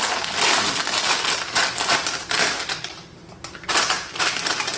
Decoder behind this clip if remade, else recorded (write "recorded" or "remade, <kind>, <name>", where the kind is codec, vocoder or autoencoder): remade, vocoder, BigVGAN v2